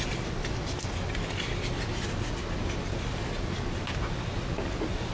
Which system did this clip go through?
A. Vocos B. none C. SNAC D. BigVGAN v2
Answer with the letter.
B